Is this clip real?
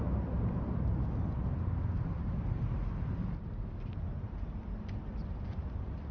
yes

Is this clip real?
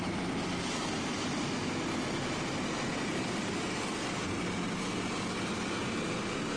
yes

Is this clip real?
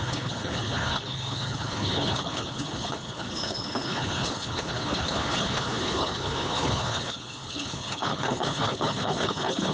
no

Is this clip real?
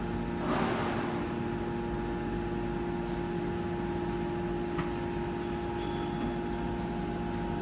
yes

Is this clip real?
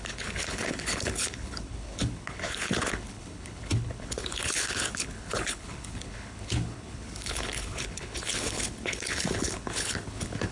no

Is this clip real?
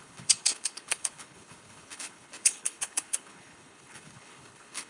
no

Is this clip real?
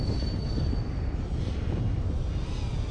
yes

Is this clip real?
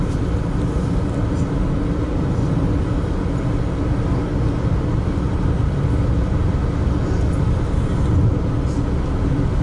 yes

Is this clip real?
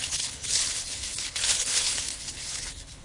no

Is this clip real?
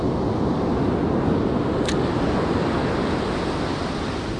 yes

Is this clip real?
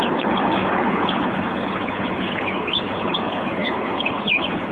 no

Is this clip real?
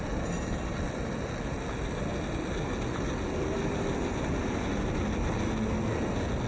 yes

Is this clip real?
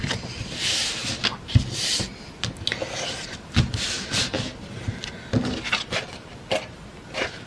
yes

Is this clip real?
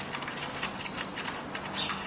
yes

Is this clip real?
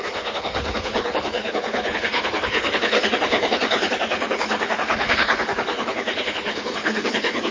no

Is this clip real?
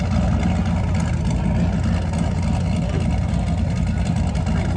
yes